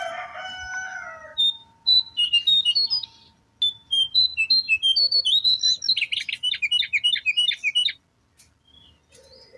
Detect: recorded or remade recorded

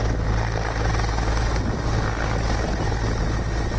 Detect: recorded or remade recorded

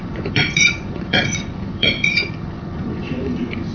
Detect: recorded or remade remade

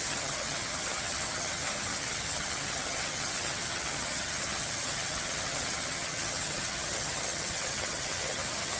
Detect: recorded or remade remade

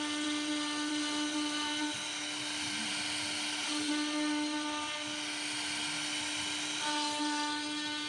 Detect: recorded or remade recorded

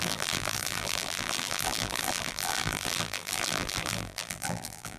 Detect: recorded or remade remade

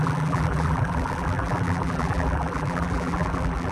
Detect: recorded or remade remade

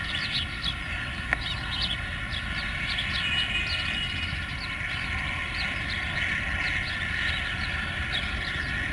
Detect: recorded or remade recorded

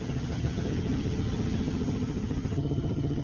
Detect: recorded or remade remade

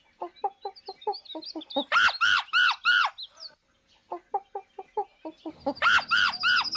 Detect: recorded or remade recorded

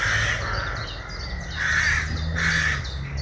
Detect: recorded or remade recorded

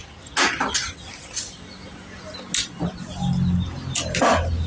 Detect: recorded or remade recorded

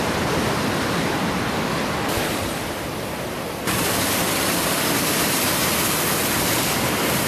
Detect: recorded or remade recorded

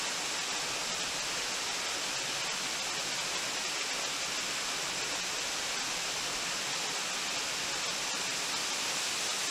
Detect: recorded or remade recorded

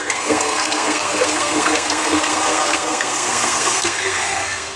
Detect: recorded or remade remade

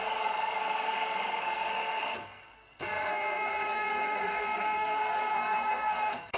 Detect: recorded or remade remade